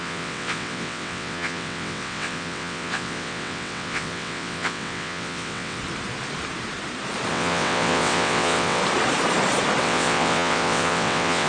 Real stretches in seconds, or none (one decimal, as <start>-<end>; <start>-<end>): 5.8-7.3; 8.8-9.8